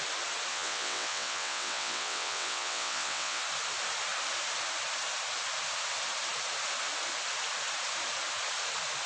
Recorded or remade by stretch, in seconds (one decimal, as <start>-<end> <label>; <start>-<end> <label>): 0.0-0.5 recorded; 0.5-3.4 remade; 3.4-9.1 recorded